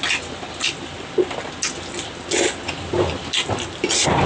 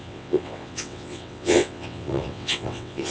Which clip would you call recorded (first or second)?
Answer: first